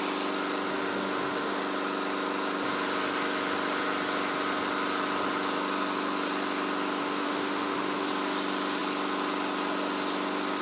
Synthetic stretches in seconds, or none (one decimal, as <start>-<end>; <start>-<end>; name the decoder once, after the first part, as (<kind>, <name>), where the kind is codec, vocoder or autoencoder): 0.7-1.6 (autoencoder, DAC-VAE); 7.0-8.1

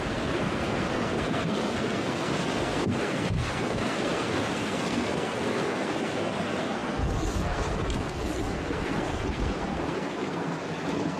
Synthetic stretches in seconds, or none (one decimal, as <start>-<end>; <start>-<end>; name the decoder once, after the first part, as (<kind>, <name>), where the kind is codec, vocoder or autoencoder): 0.0-11.2 (codec, SNAC)

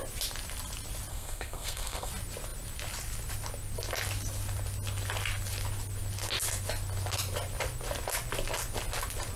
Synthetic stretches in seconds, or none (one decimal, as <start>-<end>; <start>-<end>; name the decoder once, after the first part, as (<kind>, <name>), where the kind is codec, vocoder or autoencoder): 1.1-2.1 (codec, SNAC)